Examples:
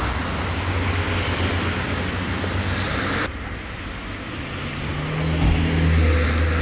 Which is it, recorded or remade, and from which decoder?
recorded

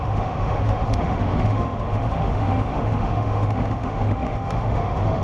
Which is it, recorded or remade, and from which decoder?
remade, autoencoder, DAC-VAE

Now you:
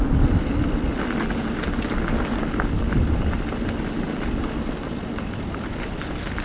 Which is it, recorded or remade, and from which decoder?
recorded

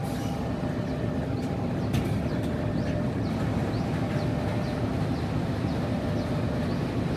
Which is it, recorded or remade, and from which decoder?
recorded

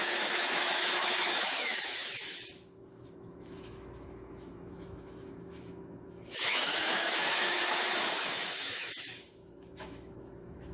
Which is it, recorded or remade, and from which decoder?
remade, autoencoder, DAC-VAE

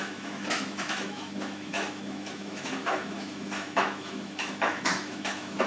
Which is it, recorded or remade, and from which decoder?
remade, autoencoder, DAC-VAE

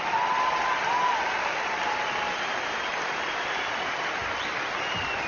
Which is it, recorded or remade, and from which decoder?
recorded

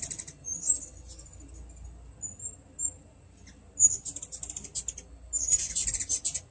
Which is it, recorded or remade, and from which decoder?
recorded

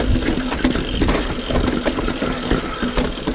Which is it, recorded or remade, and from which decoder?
recorded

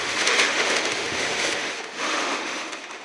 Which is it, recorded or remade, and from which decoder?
remade, autoencoder, DAC-VAE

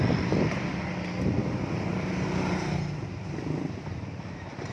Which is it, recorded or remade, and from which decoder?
recorded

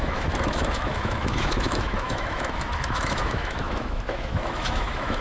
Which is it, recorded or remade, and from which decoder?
remade, autoencoder, DAC-VAE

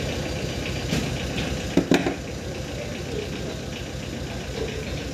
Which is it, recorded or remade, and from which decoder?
recorded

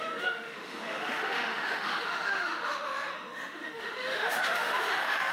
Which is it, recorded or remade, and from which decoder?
remade, autoencoder, DAC-VAE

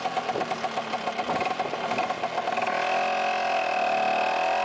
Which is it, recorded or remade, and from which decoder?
recorded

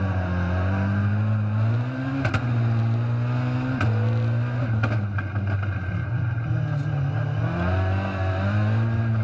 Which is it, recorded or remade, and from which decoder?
recorded